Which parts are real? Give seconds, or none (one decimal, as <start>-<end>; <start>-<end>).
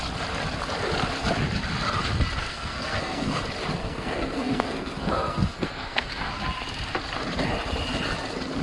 0.0-2.4; 3.4-3.8; 6.3-8.6